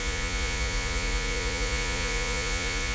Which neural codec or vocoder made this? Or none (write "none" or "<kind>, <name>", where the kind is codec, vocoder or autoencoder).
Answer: vocoder, Vocos